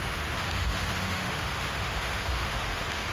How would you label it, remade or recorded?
remade